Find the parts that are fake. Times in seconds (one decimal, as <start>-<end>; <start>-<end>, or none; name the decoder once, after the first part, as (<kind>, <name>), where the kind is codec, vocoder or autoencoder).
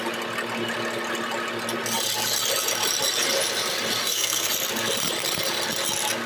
4.0-4.5 (codec, SNAC)